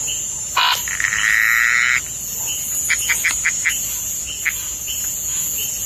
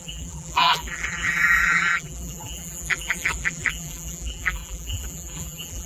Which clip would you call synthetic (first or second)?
second